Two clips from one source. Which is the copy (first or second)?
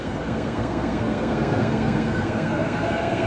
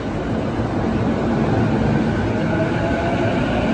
first